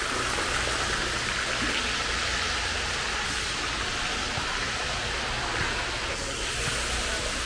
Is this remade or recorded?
recorded